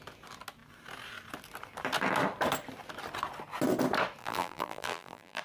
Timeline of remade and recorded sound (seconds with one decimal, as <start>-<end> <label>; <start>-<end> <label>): 0.0-4.2 recorded; 4.2-5.4 remade